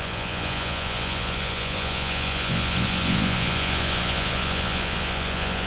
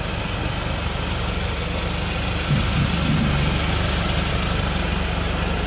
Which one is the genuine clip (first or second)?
second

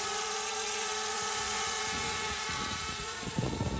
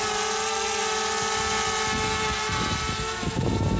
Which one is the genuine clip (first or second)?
second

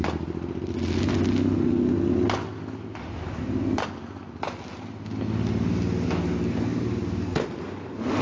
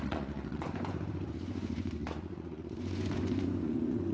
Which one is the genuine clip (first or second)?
first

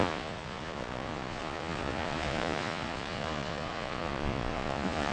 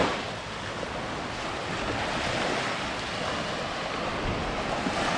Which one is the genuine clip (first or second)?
second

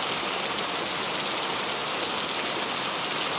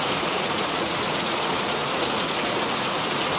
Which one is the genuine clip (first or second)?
first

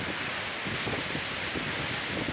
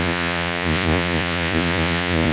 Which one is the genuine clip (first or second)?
first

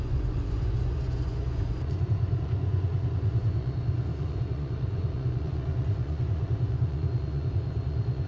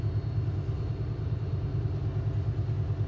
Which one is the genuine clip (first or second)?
second